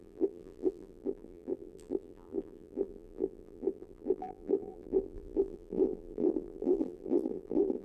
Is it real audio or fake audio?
fake